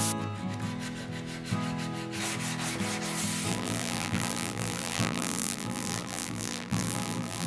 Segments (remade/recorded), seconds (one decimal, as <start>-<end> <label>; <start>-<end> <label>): 0.0-3.5 recorded; 3.5-7.5 remade